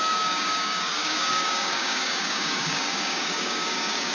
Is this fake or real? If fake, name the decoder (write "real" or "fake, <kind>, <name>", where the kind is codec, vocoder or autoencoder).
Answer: fake, codec, DAC